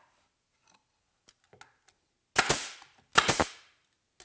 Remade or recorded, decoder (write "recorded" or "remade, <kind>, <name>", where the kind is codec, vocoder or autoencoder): recorded